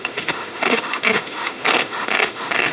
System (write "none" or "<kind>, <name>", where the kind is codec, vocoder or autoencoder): autoencoder, DAC-VAE